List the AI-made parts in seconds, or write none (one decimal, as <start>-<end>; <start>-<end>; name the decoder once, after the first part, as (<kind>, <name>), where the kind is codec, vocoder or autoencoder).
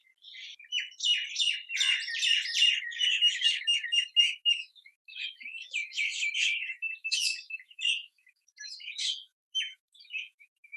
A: 2.8-10.8 (autoencoder, DAC-VAE)